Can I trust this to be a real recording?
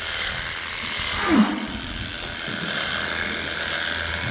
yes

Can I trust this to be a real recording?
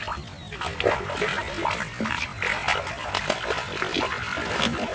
yes